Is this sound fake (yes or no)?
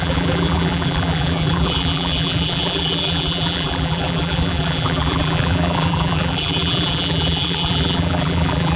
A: yes